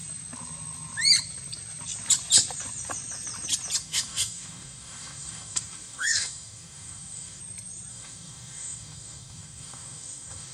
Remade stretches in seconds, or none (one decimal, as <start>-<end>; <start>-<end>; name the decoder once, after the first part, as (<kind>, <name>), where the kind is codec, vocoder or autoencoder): 3.8-7.4 (codec, DAC); 7.9-10.5